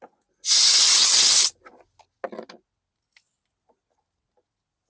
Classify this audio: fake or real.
real